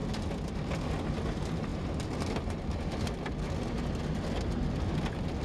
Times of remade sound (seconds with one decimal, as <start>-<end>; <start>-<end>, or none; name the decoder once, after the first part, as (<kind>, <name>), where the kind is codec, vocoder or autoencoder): none